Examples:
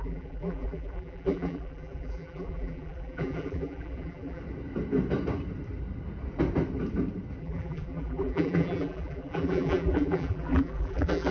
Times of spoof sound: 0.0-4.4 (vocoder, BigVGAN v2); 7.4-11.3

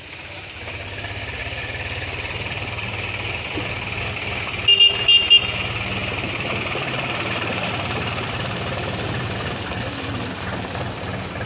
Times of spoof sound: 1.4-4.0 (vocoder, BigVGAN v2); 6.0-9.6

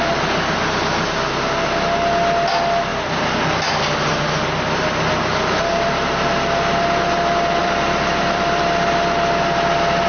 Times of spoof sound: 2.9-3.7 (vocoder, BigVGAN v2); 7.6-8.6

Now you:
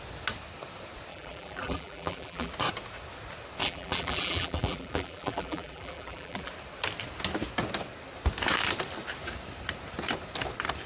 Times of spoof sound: 1.1-2.5 (vocoder, BigVGAN v2); 3.6-6.5

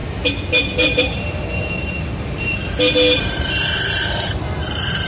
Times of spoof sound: 0.5-2.6 (vocoder, BigVGAN v2); 3.2-5.1

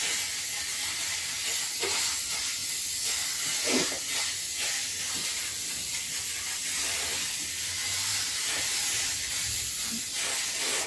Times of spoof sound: 0.7-1.4 (vocoder, BigVGAN v2); 2.6-3.9; 5.3-9.3